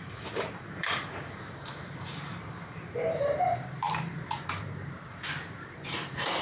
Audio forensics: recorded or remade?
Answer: remade